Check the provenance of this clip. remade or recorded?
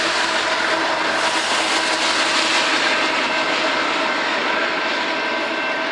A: recorded